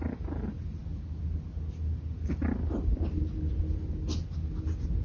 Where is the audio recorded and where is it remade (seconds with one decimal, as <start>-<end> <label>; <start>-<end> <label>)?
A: 0.0-5.0 recorded